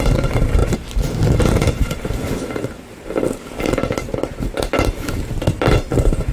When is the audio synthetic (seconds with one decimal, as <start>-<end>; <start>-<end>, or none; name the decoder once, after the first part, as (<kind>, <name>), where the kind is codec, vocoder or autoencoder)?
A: none